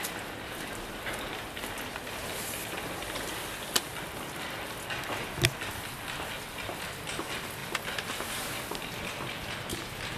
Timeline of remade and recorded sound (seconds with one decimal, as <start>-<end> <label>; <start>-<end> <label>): 0.0-10.2 recorded